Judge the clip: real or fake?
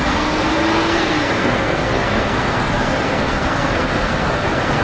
fake